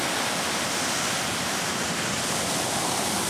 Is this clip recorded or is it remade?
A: recorded